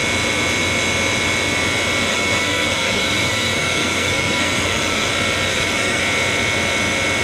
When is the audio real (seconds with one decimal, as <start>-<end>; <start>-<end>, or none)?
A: 0.0-2.1; 5.1-5.5; 6.0-7.2